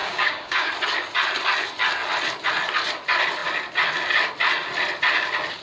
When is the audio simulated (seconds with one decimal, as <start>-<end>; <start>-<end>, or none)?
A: 0.0-0.7